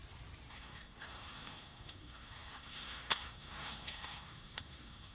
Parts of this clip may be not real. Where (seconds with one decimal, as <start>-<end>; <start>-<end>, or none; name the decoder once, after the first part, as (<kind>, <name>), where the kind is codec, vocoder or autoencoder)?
0.5-5.1 (codec, SNAC)